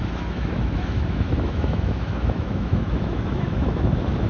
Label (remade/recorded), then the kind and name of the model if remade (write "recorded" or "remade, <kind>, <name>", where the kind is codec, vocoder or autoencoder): remade, autoencoder, DAC-VAE